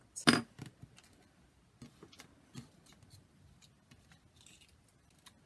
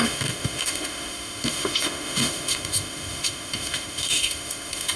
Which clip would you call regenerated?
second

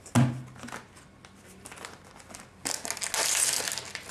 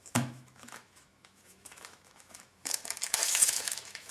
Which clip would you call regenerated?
second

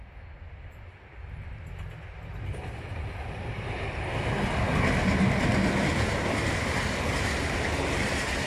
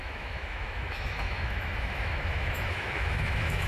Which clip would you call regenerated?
second